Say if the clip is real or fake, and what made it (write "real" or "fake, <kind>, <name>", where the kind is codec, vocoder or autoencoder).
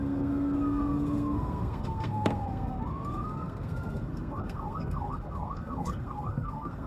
fake, codec, SNAC